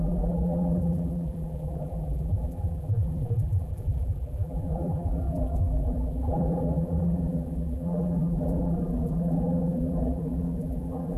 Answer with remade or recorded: remade